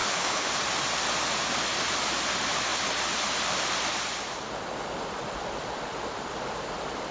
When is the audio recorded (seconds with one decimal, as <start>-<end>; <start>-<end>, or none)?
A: 0.5-7.1